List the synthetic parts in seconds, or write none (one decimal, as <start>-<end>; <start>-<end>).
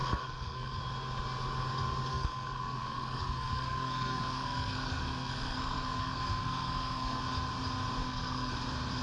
0.0-0.8; 2.1-7.2; 8.0-8.5